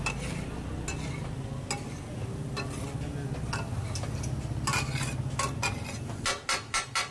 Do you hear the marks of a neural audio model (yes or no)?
no